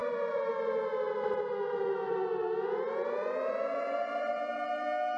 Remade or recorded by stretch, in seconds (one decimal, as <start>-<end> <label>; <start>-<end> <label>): 0.0-5.2 recorded